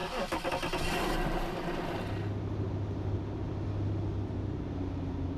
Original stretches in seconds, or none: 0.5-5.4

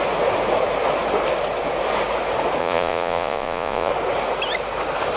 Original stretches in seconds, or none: 0.0-2.6; 3.9-5.2